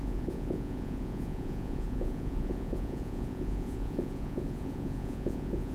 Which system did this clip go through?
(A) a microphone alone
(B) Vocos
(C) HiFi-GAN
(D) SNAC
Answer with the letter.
B